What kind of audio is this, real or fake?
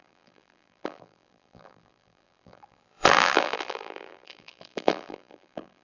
fake